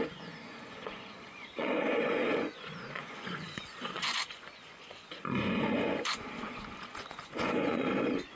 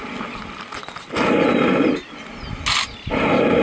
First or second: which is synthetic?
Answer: first